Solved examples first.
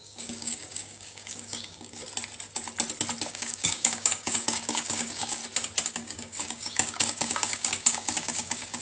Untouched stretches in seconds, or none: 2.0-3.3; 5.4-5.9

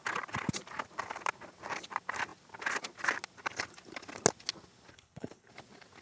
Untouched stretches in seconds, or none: 0.0-4.9; 5.5-6.0

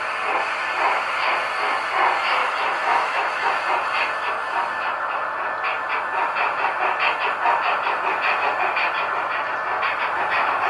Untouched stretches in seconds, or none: 0.0-2.4; 3.6-10.7

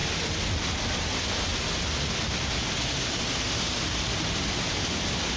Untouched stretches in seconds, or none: 1.1-5.4